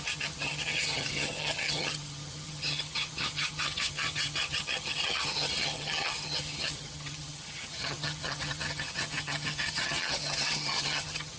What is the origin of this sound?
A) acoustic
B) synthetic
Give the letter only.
B